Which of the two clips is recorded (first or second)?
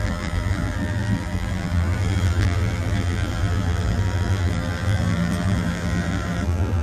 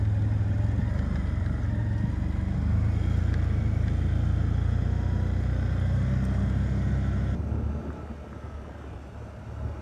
second